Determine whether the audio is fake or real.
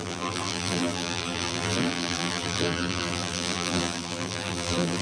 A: fake